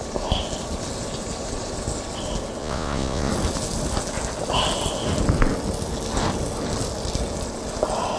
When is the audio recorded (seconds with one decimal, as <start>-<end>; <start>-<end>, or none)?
0.0-2.6; 3.3-8.2